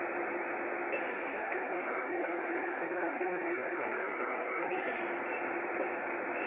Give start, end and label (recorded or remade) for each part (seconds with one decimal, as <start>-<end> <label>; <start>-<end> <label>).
0.0-1.1 recorded; 1.1-5.0 remade; 5.0-6.5 recorded